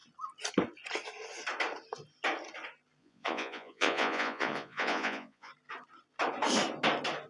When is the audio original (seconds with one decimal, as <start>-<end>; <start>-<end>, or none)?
0.0-3.0; 5.5-7.3